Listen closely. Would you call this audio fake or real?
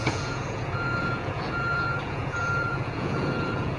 fake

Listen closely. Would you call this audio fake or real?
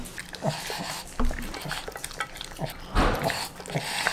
real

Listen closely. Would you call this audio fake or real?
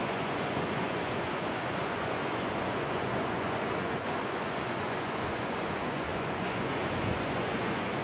fake